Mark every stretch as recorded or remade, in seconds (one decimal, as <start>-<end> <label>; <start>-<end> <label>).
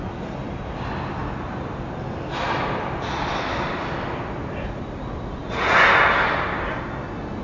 0.0-7.4 recorded